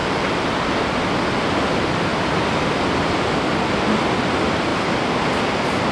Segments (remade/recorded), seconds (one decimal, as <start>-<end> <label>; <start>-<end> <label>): 0.0-5.9 recorded